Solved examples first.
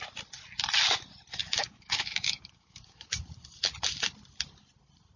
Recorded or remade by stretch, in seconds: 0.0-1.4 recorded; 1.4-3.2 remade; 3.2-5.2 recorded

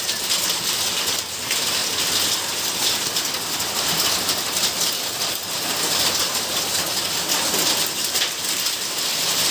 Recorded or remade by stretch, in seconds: 0.0-9.5 recorded

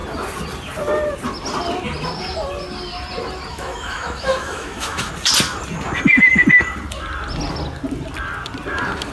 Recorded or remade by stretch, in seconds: 0.0-3.5 recorded; 3.5-5.1 remade; 5.1-9.1 recorded

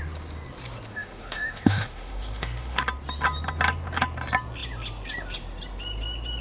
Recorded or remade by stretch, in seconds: 0.0-0.9 recorded; 0.9-2.8 remade; 2.8-6.4 recorded